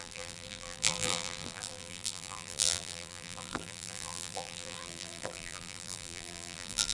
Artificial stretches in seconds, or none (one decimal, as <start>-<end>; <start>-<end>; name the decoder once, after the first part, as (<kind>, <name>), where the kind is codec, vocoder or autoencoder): 0.0-6.9 (vocoder, BigVGAN v2)